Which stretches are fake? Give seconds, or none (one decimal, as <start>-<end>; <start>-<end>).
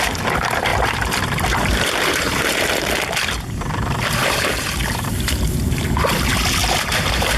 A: 0.7-5.1; 6.6-7.4